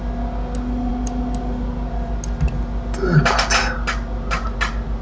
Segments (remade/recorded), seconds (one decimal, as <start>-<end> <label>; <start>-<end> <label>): 0.0-5.0 recorded